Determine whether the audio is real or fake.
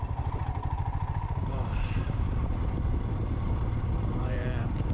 fake